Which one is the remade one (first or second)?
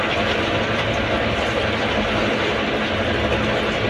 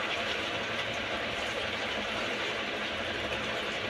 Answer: second